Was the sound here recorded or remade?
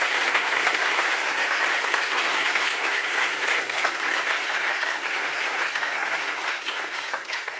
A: remade